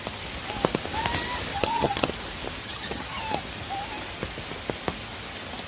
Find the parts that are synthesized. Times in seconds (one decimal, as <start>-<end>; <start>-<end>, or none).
1.5-2.1; 2.6-3.2